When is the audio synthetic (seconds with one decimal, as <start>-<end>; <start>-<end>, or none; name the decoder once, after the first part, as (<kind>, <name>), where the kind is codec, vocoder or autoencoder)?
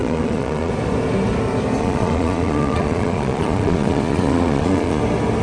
0.0-0.7 (vocoder, Vocos); 1.8-5.0